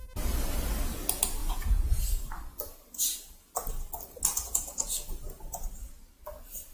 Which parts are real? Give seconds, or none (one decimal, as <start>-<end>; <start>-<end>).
0.0-1.4; 2.0-4.3; 4.9-6.7